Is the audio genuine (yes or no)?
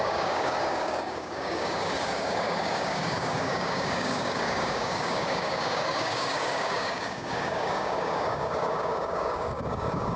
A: no